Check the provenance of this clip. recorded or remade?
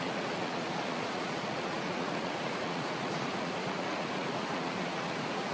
remade